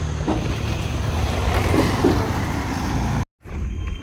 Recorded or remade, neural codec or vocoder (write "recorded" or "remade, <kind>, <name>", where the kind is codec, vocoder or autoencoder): recorded